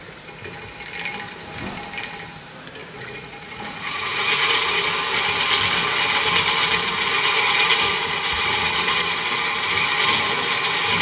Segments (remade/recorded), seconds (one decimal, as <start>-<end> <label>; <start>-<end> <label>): 0.0-2.8 recorded; 2.8-4.8 remade; 4.8-7.9 recorded; 7.9-9.1 remade; 9.1-11.0 recorded